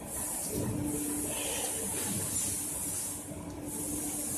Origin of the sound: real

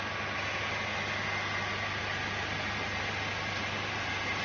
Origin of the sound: real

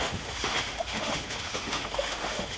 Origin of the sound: fake